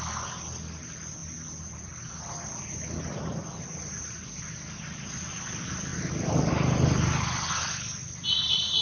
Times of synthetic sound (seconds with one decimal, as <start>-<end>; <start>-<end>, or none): none